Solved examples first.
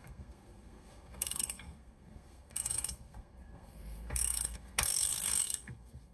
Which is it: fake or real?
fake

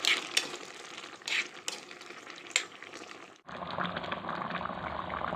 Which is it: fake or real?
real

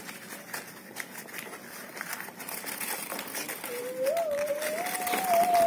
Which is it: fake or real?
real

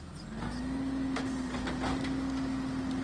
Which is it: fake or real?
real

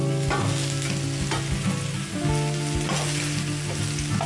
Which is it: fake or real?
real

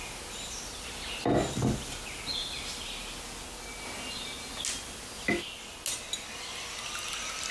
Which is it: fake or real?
real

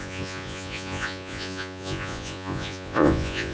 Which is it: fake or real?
fake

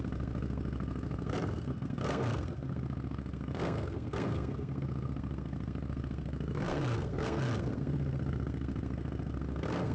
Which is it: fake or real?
fake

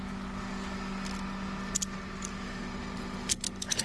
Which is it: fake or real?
real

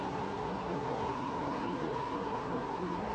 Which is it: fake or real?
fake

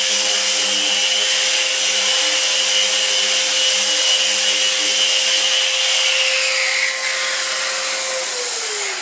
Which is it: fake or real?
real